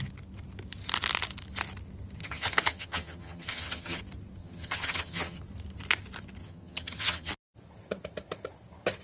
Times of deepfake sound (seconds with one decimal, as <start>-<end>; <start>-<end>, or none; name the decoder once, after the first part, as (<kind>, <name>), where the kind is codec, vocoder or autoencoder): 2.2-4.0 (vocoder, HiFi-GAN); 4.4-5.4; 6.4-7.3